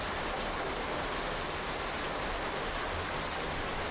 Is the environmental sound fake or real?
fake